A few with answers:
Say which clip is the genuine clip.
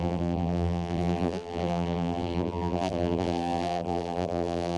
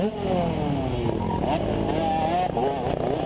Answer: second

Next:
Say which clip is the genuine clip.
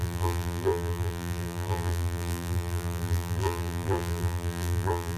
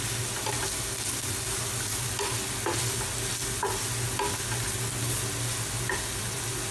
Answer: second